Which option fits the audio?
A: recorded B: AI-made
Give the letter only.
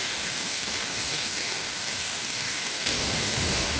B